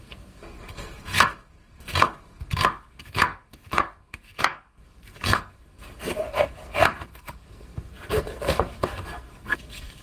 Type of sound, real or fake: fake